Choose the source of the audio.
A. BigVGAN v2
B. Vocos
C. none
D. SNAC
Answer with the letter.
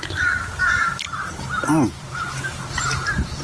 A